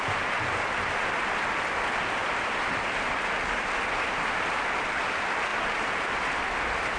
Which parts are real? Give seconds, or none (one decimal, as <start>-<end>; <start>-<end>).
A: 0.0-7.0